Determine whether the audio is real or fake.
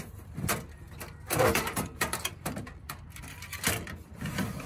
fake